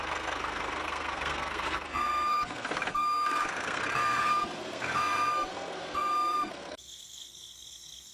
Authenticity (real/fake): fake